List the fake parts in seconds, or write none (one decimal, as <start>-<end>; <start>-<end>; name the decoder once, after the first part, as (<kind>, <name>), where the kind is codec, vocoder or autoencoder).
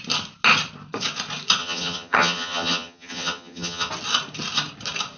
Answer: 1.6-3.9 (vocoder, HiFi-GAN)